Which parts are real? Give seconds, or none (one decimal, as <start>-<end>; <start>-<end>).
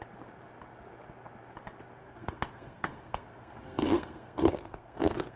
0.0-2.0